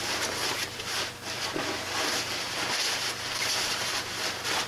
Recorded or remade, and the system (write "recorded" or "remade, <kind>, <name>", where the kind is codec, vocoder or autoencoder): recorded